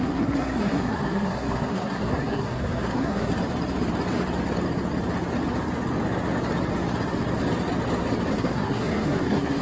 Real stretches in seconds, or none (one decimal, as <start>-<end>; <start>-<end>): 3.3-8.3